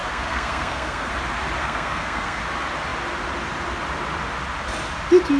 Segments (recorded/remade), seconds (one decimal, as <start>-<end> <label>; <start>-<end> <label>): 0.0-1.1 remade; 1.1-1.6 recorded; 1.6-2.4 remade; 2.4-5.4 recorded